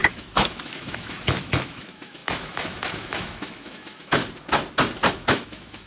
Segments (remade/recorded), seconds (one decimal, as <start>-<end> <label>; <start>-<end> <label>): 0.0-4.2 remade; 4.2-5.1 recorded; 5.1-5.9 remade